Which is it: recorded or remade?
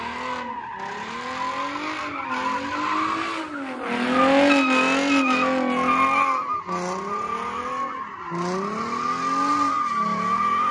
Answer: recorded